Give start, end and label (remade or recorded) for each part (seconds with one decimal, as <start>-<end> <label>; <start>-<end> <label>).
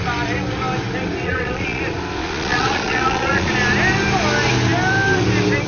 0.0-1.2 recorded; 1.2-1.8 remade; 1.8-2.2 recorded; 2.2-3.5 remade; 3.5-5.7 recorded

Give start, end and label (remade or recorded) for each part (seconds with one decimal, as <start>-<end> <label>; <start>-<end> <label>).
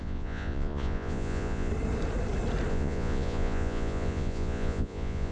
0.0-1.7 remade; 1.7-2.7 recorded; 2.7-5.3 remade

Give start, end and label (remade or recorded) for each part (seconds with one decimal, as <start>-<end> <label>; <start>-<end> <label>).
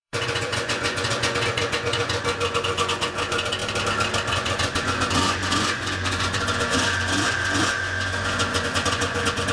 0.0-3.6 remade; 3.6-4.3 recorded; 4.3-9.5 remade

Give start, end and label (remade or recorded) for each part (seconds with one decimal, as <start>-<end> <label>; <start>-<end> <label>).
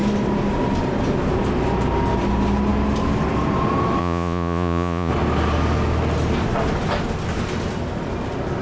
0.0-4.0 recorded; 4.0-5.1 remade; 5.1-8.6 recorded